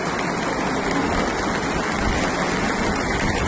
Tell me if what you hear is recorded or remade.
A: recorded